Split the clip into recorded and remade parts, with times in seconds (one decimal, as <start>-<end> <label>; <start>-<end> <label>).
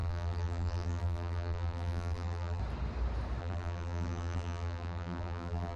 0.0-2.6 remade; 2.6-3.4 recorded; 3.4-5.8 remade